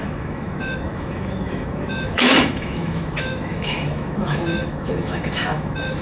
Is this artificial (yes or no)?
yes